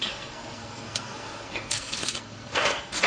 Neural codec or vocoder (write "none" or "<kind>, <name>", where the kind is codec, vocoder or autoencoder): codec, SNAC